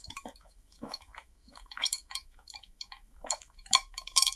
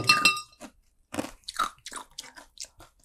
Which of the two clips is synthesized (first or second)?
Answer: first